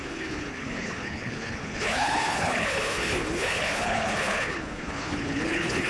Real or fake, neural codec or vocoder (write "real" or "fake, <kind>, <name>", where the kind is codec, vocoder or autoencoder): fake, codec, HILCodec